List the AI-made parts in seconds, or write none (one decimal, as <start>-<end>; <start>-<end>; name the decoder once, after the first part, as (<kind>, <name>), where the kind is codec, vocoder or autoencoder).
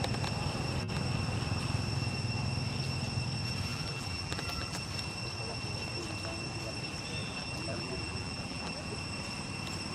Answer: 3.7-4.8 (vocoder, BigVGAN v2); 7.2-8.9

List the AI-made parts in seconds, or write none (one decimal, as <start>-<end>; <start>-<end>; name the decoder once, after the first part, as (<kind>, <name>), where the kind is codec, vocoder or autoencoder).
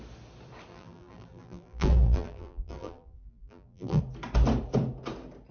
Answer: 0.7-4.0 (vocoder, BigVGAN v2)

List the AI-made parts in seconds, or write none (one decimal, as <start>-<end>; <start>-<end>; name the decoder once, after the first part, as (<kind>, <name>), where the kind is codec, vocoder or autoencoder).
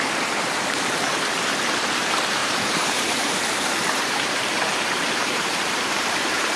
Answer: 2.4-6.6 (vocoder, BigVGAN v2)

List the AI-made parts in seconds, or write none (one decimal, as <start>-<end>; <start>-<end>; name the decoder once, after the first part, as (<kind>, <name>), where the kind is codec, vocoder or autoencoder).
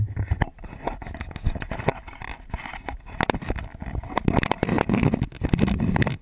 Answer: none